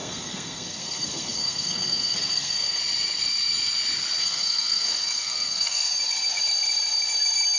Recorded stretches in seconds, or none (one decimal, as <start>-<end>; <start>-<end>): 2.8-4.2; 5.9-7.6